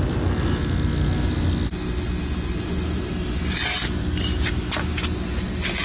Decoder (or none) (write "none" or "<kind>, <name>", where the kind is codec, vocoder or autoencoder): none